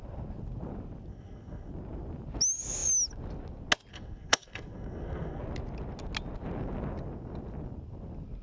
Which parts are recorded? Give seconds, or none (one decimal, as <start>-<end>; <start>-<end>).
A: 0.0-1.1; 1.7-3.9; 5.4-8.4